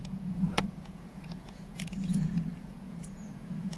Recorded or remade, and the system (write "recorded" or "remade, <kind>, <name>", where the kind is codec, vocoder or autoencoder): remade, vocoder, Vocos